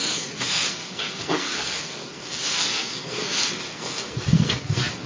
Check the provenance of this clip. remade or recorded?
remade